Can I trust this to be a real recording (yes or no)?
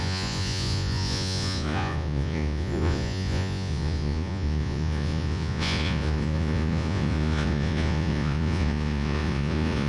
no